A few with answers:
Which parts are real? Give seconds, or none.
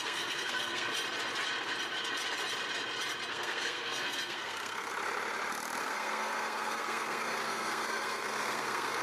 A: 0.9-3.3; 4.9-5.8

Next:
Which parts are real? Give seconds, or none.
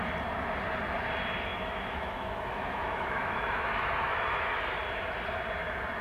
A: 0.0-1.5; 4.5-6.0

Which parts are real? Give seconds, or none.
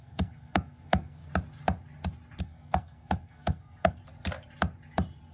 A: 1.3-2.4; 4.0-5.3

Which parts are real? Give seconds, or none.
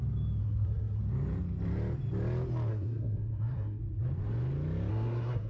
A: 0.0-0.4; 1.0-2.7; 3.8-4.9